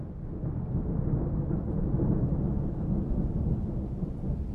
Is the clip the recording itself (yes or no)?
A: yes